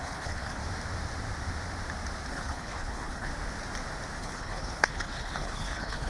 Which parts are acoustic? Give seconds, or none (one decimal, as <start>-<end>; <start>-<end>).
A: 0.6-2.3; 3.3-4.2